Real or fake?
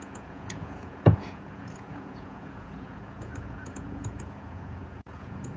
fake